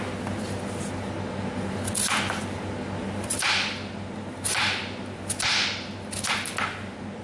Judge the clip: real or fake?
real